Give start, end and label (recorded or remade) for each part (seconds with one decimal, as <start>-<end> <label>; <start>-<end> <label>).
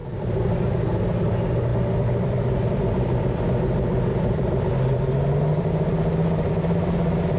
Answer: 0.0-0.7 remade; 0.7-1.7 recorded; 1.7-3.4 remade; 3.4-4.1 recorded; 4.1-5.7 remade; 5.7-7.4 recorded